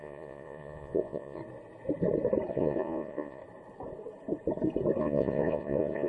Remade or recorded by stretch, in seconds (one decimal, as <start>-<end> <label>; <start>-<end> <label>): 0.0-1.4 remade; 1.4-2.5 recorded; 2.5-3.4 remade; 3.4-5.0 recorded; 5.0-6.1 remade